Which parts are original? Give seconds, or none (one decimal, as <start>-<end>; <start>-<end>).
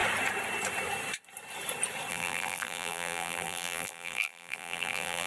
0.0-2.1